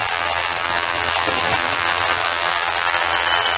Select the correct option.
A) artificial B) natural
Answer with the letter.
A